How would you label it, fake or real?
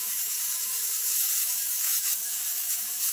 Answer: fake